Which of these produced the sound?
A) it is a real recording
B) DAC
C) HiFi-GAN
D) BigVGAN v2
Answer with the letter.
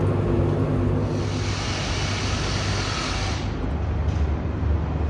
A